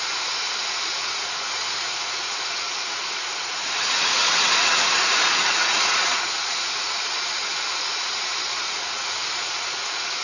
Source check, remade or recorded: remade